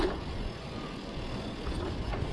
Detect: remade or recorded remade